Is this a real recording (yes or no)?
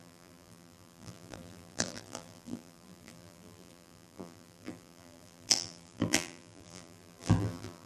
no